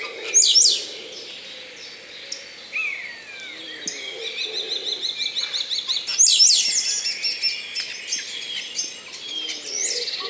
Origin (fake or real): real